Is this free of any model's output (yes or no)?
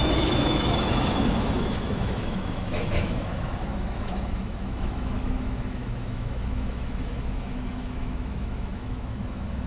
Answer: no